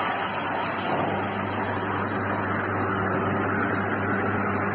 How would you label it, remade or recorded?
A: recorded